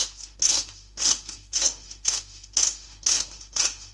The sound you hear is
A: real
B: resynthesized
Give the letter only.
B